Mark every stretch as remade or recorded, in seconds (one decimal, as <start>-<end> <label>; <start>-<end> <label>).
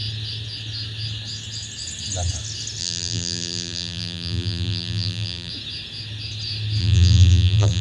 0.0-2.8 recorded; 2.8-5.5 remade; 5.5-6.8 recorded; 6.8-7.8 remade